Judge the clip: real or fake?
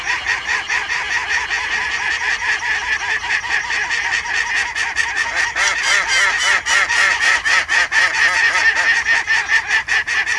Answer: real